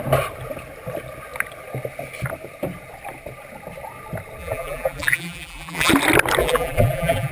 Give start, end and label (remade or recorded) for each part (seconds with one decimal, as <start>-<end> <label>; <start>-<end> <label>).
0.0-4.4 recorded; 4.4-5.9 remade; 5.9-6.4 recorded; 6.4-7.3 remade